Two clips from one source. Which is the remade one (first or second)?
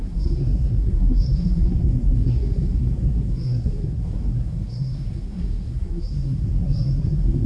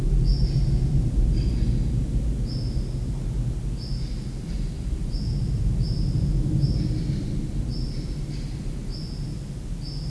first